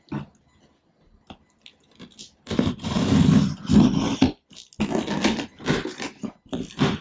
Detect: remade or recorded recorded